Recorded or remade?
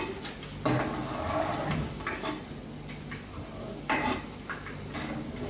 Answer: recorded